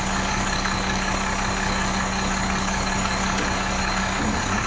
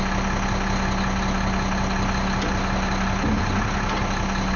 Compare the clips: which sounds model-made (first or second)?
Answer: first